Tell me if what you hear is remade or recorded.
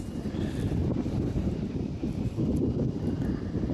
recorded